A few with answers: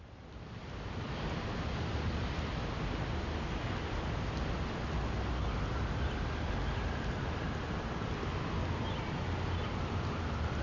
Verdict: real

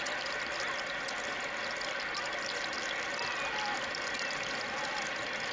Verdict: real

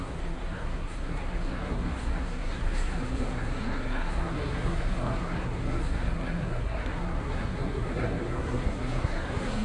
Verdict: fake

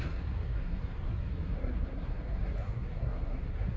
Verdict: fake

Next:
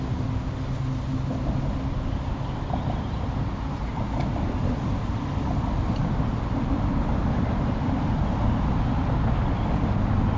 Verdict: real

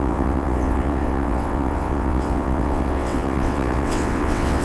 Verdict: fake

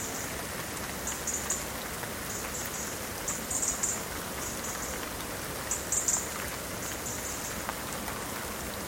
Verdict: real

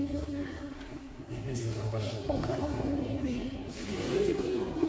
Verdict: fake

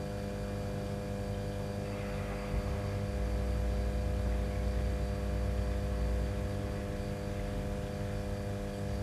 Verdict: real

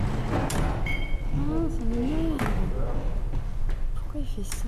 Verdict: real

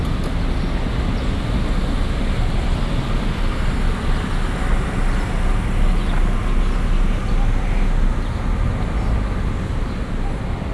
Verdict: real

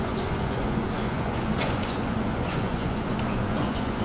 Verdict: fake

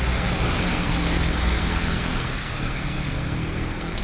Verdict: fake